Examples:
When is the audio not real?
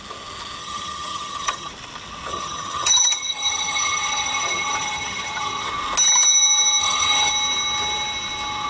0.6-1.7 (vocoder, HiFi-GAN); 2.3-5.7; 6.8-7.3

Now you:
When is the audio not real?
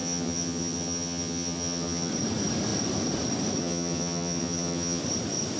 0.0-2.1 (vocoder, HiFi-GAN); 3.6-5.0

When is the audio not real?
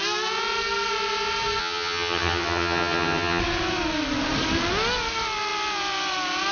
1.6-3.4 (vocoder, HiFi-GAN)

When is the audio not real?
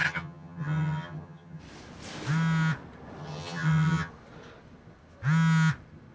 0.0-1.6 (vocoder, HiFi-GAN); 3.2-4.1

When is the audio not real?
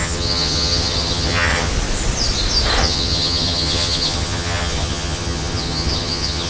0.0-1.7 (vocoder, HiFi-GAN); 2.8-6.5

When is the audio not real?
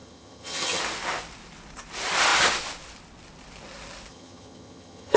0.0-0.8 (vocoder, HiFi-GAN); 4.1-5.2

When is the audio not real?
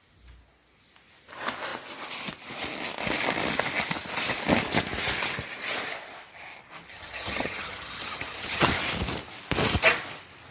6.9-8.7 (vocoder, HiFi-GAN)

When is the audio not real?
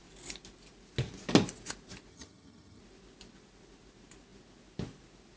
2.1-2.8 (vocoder, HiFi-GAN)